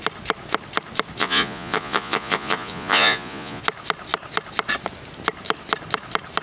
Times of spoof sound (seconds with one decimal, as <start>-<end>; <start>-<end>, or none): 1.2-3.6